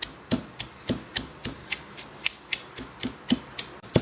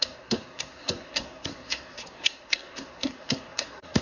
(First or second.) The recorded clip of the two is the first